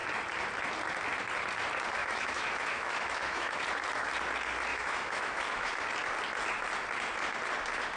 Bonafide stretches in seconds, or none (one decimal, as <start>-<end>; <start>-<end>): 0.0-2.0; 3.6-4.7; 5.8-8.0